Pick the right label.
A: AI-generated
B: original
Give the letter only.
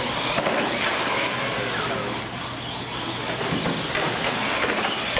B